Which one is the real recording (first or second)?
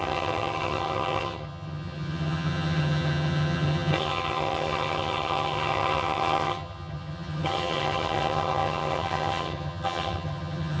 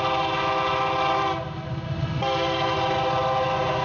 second